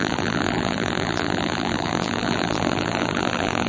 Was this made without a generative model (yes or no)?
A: no